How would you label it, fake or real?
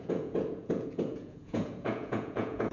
fake